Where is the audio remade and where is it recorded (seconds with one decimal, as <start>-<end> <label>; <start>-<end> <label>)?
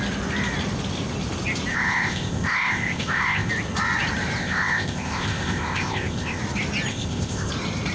0.0-1.7 recorded; 1.7-3.5 remade; 3.5-4.4 recorded; 4.4-6.4 remade; 6.4-6.9 recorded; 6.9-7.5 remade; 7.5-7.9 recorded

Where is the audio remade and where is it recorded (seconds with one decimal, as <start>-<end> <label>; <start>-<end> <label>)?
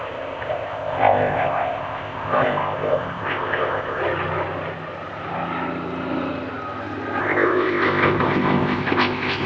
0.0-4.0 remade; 4.0-7.2 recorded; 7.2-9.5 remade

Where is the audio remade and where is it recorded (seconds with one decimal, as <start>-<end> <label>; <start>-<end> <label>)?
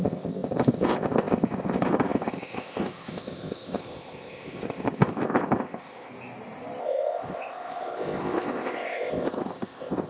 0.0-6.1 remade; 6.1-6.8 recorded; 6.8-10.1 remade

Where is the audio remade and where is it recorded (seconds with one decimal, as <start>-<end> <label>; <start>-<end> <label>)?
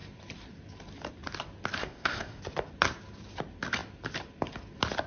0.0-1.8 recorded; 1.8-2.4 remade; 2.4-5.1 recorded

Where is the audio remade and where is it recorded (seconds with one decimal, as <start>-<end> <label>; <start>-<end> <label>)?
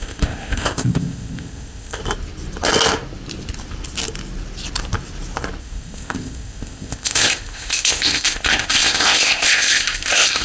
0.0-2.0 remade; 2.0-5.6 recorded; 5.6-10.4 remade